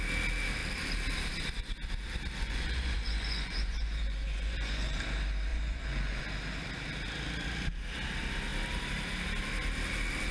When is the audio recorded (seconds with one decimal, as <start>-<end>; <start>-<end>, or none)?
0.0-2.4; 5.0-5.5; 6.2-10.3